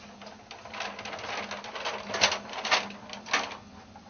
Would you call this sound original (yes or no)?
yes